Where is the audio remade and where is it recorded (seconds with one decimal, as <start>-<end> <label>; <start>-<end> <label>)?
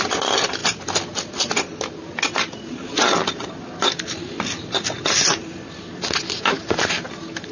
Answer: 0.0-7.5 recorded